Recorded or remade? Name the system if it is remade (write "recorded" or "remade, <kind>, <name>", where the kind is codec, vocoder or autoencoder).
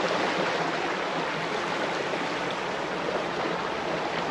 recorded